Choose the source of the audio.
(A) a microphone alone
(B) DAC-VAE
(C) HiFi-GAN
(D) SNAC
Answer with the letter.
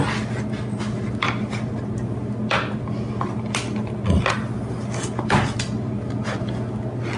A